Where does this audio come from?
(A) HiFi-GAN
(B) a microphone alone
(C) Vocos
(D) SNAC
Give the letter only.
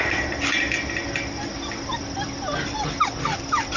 B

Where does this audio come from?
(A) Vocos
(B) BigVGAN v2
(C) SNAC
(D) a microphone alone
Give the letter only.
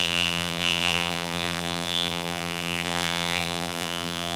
B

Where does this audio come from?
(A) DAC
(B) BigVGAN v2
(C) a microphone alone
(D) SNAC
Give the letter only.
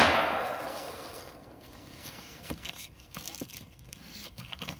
D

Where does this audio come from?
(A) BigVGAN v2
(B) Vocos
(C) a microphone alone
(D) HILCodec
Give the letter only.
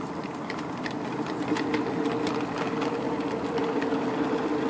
C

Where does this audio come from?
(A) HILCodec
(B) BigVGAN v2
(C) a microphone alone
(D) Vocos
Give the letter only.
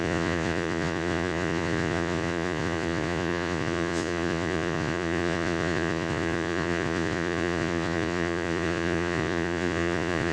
D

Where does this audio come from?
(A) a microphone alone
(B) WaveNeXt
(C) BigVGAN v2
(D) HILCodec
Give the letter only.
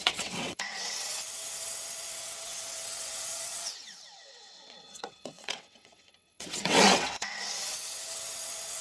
B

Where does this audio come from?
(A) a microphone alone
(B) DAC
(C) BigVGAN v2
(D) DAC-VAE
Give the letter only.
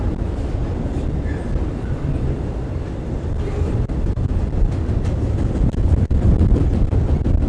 A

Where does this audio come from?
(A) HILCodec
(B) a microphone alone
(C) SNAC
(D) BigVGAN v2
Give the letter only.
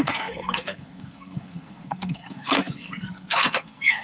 C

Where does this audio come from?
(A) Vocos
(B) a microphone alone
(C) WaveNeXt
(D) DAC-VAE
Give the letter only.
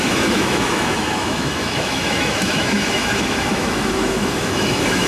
D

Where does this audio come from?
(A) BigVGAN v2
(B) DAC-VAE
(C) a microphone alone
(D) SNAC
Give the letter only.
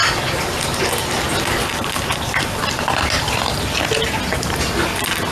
C